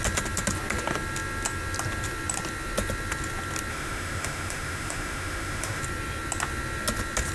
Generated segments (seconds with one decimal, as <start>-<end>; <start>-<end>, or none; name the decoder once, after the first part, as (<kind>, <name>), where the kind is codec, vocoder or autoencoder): 3.7-5.8 (autoencoder, DAC-VAE)